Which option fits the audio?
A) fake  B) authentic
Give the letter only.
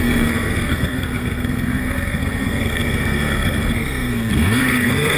A